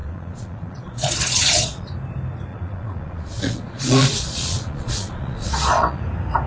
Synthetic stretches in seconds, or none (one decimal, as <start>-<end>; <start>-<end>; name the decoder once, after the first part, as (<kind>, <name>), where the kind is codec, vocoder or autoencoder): 0.0-1.9 (vocoder, Vocos); 2.5-6.0